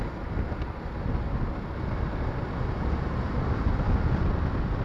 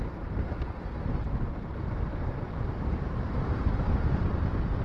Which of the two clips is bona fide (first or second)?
first